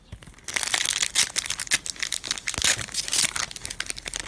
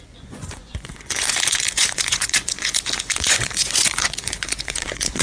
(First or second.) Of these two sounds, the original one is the first